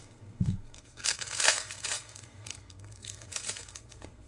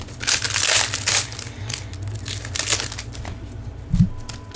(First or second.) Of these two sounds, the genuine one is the second